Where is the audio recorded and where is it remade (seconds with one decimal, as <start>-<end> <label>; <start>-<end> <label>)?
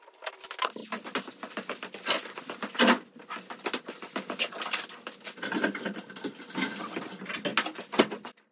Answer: 0.0-8.5 recorded